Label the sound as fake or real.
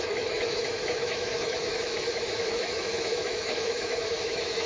fake